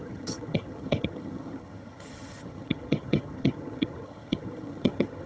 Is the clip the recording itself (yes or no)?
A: no